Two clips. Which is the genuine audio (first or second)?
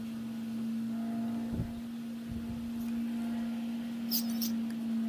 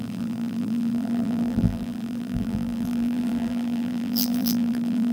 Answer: first